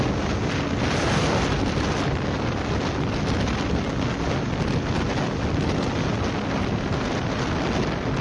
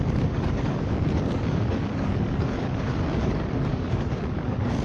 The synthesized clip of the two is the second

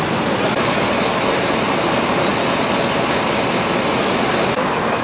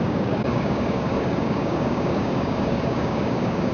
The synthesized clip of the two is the second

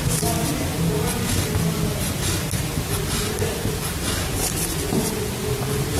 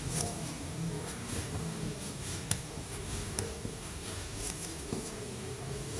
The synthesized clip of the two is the second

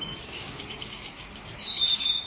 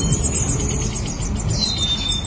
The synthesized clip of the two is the first